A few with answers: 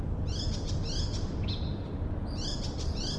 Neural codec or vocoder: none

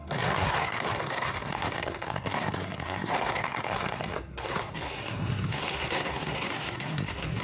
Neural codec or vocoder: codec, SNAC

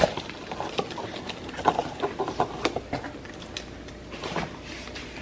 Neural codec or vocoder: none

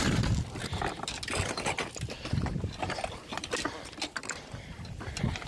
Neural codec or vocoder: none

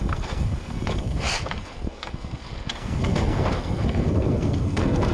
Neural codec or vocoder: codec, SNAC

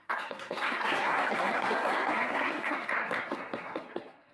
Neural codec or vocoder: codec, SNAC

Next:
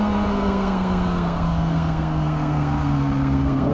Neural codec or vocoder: codec, SNAC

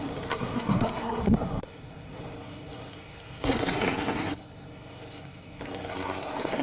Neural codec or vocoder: codec, SNAC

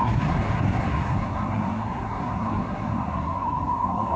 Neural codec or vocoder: codec, SNAC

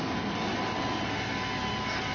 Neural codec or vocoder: none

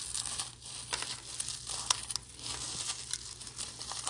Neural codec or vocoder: none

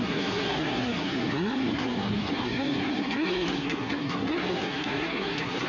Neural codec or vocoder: codec, SNAC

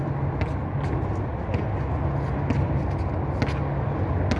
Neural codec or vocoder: none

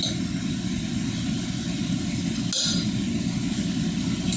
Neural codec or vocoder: none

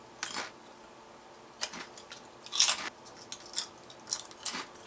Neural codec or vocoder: none